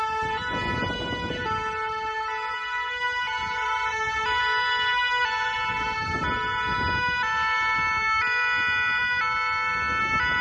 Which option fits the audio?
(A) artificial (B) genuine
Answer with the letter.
B